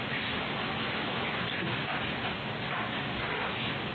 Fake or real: fake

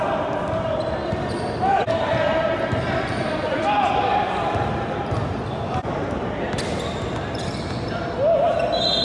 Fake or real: real